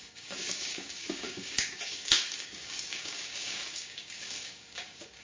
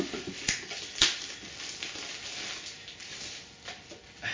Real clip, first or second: second